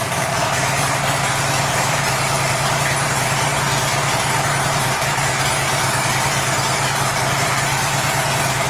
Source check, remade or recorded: remade